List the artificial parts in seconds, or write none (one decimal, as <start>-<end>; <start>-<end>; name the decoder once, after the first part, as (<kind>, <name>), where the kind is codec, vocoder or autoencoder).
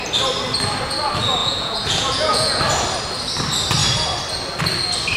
1.4-2.6 (vocoder, Vocos)